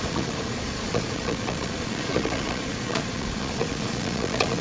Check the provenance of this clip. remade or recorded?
remade